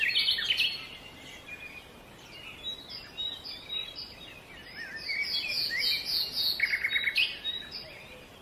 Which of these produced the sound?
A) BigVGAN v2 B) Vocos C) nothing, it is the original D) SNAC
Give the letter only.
C